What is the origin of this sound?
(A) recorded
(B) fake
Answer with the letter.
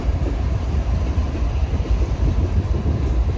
B